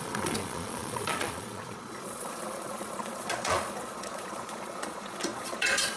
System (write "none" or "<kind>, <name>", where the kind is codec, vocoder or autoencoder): vocoder, Vocos